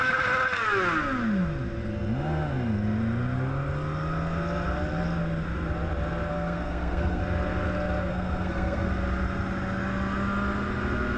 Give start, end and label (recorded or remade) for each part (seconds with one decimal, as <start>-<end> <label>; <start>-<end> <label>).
0.0-6.3 recorded; 6.3-7.2 remade; 7.2-8.1 recorded; 8.1-8.9 remade; 8.9-11.2 recorded